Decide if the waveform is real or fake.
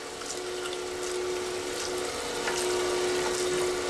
real